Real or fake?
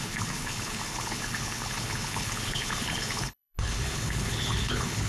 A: fake